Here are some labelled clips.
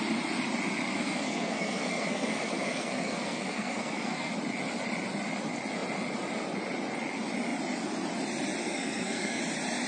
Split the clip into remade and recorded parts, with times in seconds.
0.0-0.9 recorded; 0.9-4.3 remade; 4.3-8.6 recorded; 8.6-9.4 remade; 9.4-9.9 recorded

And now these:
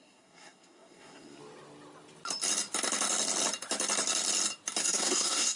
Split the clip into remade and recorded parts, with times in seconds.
0.0-1.4 remade; 1.4-4.8 recorded; 4.8-5.6 remade